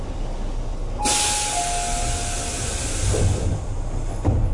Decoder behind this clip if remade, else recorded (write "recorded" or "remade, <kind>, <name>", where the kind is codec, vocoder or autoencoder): recorded